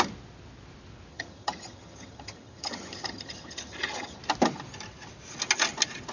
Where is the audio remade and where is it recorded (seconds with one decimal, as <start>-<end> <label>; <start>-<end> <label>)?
0.0-1.1 recorded; 1.1-4.2 remade; 4.2-6.1 recorded